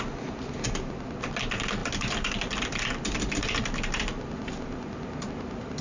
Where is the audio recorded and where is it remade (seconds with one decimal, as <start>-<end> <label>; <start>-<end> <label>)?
0.0-5.8 recorded